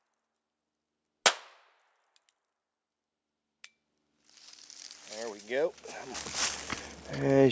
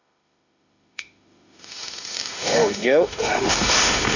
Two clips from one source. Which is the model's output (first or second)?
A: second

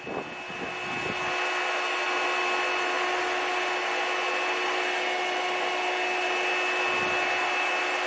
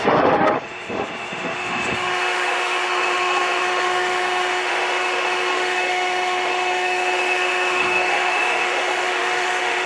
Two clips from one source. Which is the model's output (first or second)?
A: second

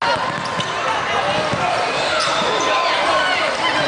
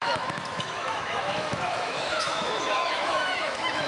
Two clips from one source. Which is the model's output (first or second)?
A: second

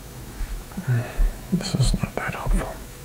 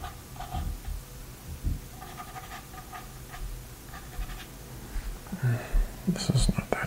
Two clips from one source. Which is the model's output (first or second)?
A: first